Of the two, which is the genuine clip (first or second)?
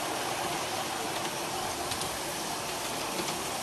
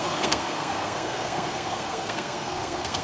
first